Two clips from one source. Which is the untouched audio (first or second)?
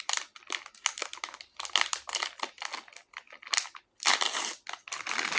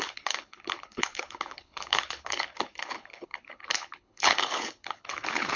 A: first